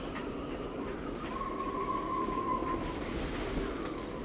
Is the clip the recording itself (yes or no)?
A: yes